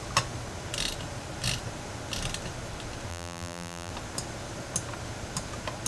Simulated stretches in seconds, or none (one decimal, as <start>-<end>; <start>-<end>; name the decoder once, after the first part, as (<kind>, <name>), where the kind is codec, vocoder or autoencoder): 3.1-3.9 (vocoder, BigVGAN v2)